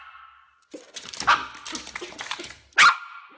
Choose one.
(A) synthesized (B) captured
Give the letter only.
B